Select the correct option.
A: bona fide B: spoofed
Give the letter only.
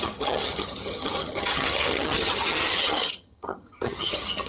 B